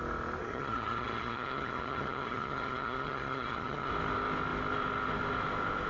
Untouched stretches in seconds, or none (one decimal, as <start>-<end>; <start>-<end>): 0.0-0.4; 3.9-5.9